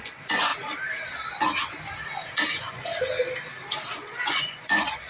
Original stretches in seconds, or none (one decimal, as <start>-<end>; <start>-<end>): 0.5-2.3; 2.9-4.3